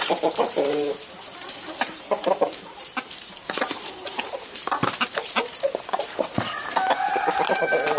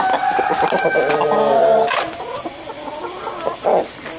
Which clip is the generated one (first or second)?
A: first